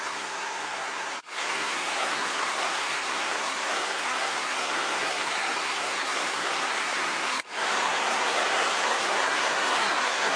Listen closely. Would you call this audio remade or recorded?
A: remade